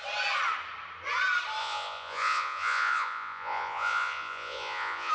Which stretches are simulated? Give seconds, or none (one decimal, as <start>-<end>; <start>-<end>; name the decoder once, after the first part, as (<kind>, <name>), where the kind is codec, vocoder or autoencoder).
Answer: 1.6-5.1 (vocoder, Vocos)